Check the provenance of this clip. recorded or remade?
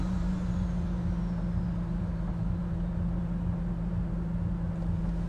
recorded